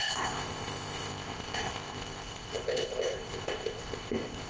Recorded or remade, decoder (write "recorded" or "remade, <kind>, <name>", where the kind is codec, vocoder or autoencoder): remade, codec, ZipCodec